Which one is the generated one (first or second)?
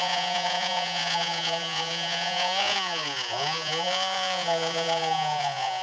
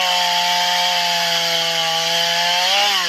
first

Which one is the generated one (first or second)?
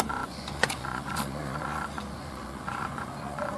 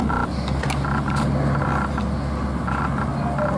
first